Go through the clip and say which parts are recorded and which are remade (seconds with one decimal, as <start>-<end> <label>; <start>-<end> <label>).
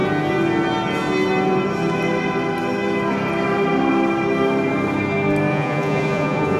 0.0-5.5 recorded; 5.5-6.6 remade